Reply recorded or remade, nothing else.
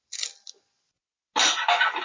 recorded